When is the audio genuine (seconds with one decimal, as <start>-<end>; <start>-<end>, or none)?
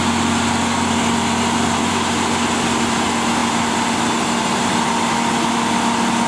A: 0.0-6.3